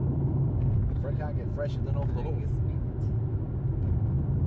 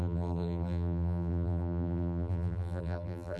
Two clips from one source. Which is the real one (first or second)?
first